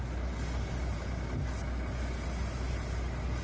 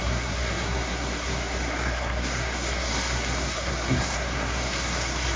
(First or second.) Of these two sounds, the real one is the first